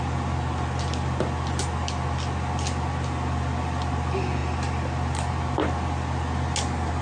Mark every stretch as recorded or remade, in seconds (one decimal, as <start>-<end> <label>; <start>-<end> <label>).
0.0-7.0 recorded